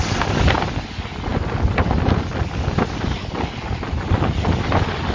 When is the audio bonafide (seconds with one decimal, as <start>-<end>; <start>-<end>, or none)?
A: 0.0-5.1

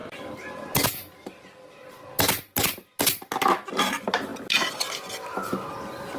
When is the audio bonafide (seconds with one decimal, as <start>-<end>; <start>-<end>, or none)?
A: 0.0-6.2

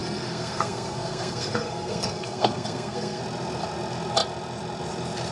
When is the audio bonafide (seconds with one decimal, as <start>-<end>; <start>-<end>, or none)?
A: 3.2-5.3

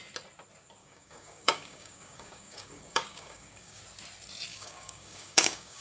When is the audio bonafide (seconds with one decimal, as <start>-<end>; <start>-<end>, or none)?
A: 0.0-0.8; 3.8-4.5

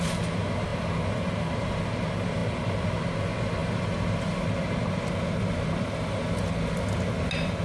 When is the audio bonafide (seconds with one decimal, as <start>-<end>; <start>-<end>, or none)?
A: 0.0-7.6

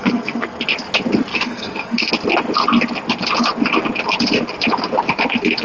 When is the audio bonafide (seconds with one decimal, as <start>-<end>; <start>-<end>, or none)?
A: 0.6-1.3; 2.1-5.6

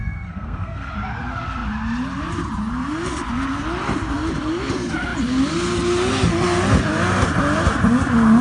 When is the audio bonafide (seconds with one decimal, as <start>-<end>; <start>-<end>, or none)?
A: 0.9-8.4